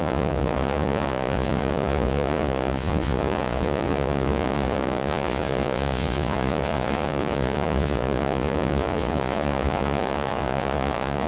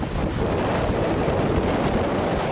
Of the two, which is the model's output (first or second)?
first